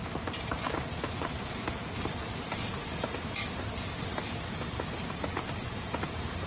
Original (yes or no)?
no